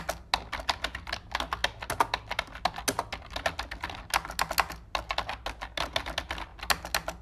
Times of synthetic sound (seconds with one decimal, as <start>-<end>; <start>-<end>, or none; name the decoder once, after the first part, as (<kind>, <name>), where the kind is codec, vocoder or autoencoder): none